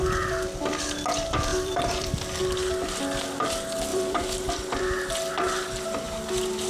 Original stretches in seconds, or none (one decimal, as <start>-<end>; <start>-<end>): 0.0-1.5; 2.2-3.9; 4.5-6.7